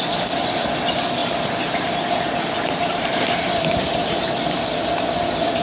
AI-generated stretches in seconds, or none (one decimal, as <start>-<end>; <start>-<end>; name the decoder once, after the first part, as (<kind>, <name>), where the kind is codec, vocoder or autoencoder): 1.2-4.2 (vocoder, BigVGAN v2)